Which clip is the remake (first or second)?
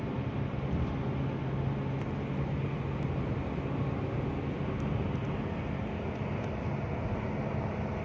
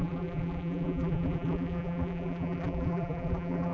second